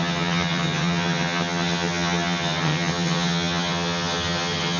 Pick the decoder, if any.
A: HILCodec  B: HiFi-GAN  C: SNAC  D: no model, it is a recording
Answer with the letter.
B